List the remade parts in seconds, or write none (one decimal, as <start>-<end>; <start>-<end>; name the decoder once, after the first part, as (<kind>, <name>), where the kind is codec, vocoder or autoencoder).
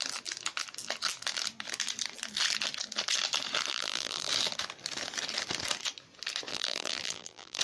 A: 3.7-4.3 (vocoder, BigVGAN v2); 6.5-7.6